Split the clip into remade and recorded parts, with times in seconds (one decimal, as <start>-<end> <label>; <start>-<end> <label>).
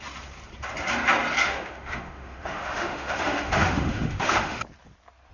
0.0-1.4 recorded; 1.4-4.6 remade; 4.6-5.3 recorded